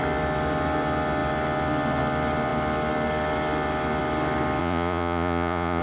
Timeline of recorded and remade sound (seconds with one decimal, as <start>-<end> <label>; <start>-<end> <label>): 0.0-4.6 recorded; 4.6-5.8 remade